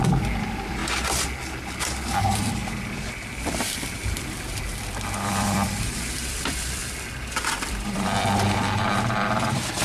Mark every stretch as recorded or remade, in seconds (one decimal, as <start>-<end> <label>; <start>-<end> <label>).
0.0-0.8 remade; 0.8-2.2 recorded; 2.2-6.8 remade; 6.8-7.5 recorded; 7.5-9.8 remade